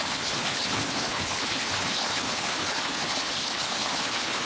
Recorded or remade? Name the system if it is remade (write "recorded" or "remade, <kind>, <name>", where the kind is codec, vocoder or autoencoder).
remade, codec, HILCodec